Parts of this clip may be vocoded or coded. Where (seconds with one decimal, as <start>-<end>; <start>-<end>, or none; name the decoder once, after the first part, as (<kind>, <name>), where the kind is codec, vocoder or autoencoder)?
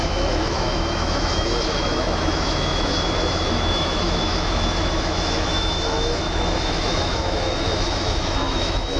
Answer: 0.0-9.0 (autoencoder, DAC-VAE)